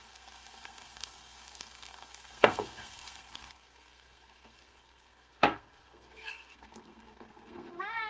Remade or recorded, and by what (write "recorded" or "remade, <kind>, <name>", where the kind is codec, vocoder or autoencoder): remade, codec, SNAC